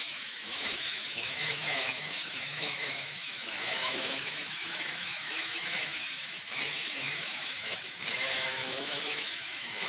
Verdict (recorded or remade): remade